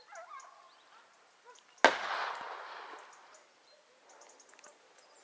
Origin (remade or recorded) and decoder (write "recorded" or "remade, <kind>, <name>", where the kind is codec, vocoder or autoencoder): recorded